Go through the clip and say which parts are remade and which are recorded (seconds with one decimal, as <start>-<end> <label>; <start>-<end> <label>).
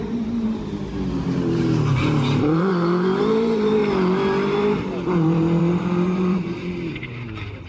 0.0-3.8 remade; 3.8-5.6 recorded; 5.6-7.7 remade